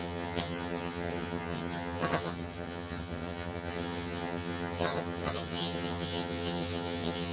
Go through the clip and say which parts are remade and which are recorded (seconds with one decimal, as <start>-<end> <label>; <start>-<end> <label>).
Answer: 0.0-7.3 remade